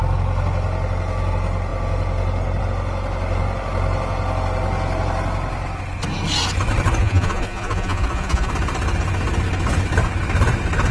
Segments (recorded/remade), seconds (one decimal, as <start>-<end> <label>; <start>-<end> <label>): 0.0-7.0 recorded; 7.0-8.5 remade; 8.5-10.9 recorded